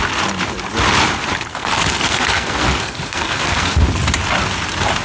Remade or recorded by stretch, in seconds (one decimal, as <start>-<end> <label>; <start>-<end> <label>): 0.0-1.5 recorded; 1.5-3.8 remade; 3.8-5.0 recorded